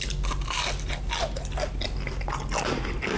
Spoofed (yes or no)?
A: no